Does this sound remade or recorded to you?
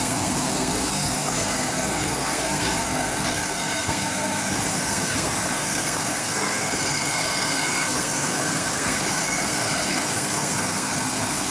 remade